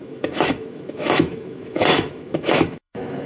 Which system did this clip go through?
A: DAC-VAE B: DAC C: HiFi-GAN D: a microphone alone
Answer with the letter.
A